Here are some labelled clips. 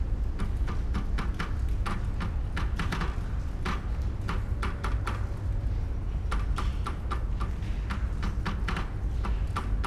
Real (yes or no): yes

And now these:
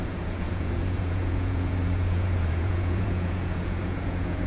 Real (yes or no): no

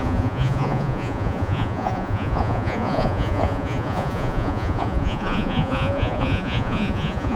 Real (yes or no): no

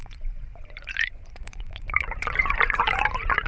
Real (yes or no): no